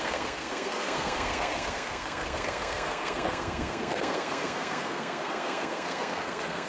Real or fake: fake